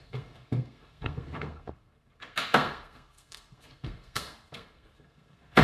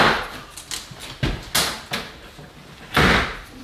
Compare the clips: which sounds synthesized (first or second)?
first